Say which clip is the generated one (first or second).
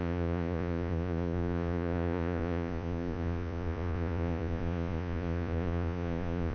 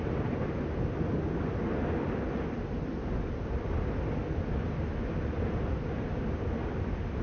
first